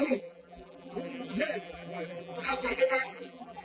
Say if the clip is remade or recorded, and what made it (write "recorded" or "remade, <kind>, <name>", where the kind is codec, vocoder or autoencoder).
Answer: remade, vocoder, BigVGAN v2